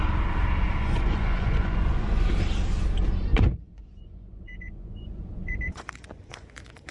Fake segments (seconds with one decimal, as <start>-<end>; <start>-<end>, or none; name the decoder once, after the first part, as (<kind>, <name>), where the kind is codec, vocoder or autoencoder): 0.8-2.3 (vocoder, Vocos); 3.3-6.9